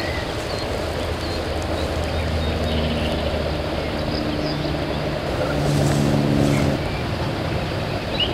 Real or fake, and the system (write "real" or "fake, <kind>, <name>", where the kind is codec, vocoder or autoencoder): real